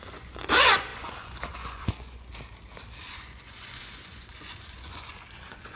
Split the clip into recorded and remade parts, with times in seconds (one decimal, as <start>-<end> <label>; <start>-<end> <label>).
0.0-2.3 remade; 2.3-3.1 recorded; 3.1-5.8 remade